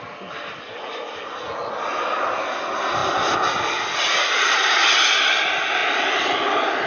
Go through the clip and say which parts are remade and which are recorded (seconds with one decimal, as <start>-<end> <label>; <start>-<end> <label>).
0.0-6.9 recorded